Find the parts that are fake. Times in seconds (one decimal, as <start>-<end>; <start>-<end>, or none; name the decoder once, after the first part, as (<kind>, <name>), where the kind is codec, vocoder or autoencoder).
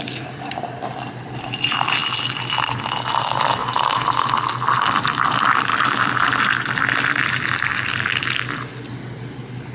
3.6-4.4 (vocoder, BigVGAN v2)